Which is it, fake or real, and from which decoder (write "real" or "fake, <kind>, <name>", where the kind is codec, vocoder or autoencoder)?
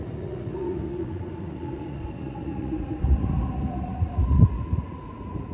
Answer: fake, vocoder, Vocos